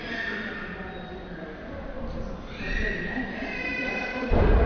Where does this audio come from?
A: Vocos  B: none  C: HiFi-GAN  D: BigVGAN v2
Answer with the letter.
D